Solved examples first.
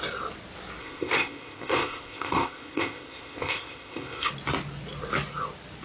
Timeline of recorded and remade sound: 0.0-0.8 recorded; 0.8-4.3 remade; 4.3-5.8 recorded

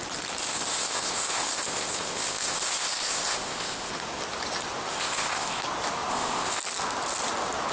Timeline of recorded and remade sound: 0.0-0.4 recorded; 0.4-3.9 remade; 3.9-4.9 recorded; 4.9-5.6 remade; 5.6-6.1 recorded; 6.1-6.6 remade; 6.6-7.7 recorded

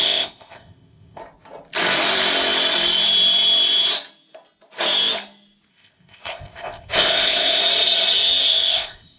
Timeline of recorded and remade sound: 0.0-1.2 remade; 1.2-5.7 recorded; 5.7-7.6 remade; 7.6-8.5 recorded; 8.5-9.2 remade

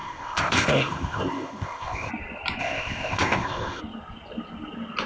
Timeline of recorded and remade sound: 0.0-2.1 remade; 2.1-2.6 recorded; 2.6-3.8 remade; 3.8-5.1 recorded

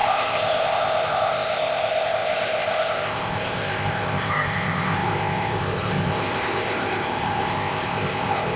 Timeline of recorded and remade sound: 0.0-8.6 remade